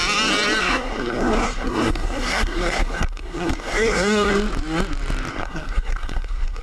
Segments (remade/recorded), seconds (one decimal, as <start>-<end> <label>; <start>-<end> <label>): 0.0-0.6 recorded; 0.6-4.3 remade; 4.3-5.3 recorded; 5.3-6.6 remade